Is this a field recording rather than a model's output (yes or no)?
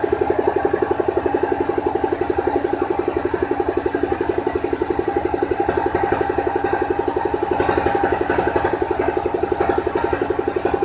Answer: yes